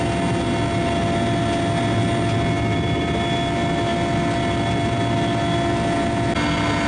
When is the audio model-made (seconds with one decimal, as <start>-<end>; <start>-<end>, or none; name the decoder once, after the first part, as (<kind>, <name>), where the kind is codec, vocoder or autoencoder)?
none